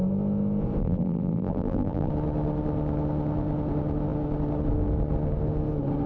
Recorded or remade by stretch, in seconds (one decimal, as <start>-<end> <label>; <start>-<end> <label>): 0.0-0.8 recorded; 0.8-2.1 remade; 2.1-6.1 recorded